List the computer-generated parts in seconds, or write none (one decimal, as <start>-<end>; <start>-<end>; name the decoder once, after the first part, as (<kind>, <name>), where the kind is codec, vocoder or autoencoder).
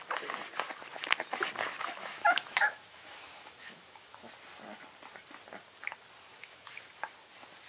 2.0-4.3 (autoencoder, DAC-VAE); 6.3-7.0